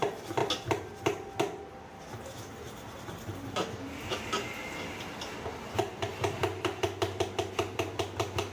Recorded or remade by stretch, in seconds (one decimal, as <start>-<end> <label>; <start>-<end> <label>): 0.0-8.5 recorded